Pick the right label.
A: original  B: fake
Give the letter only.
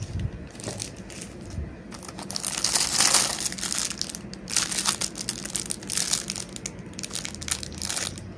A